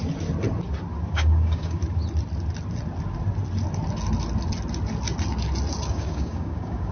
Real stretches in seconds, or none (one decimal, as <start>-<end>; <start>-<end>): 0.0-1.1; 1.8-5.9